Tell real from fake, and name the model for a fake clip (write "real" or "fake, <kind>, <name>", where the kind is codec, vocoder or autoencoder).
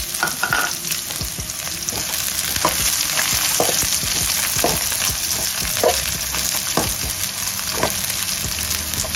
real